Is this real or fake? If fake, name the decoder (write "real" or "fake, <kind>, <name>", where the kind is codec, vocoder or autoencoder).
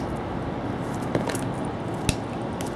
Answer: real